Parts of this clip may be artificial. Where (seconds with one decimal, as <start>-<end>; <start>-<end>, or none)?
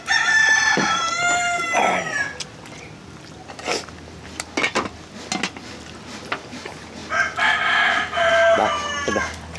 none